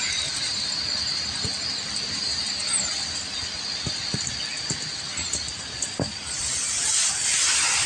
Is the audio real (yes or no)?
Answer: yes